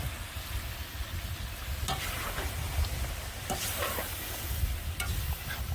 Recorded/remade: recorded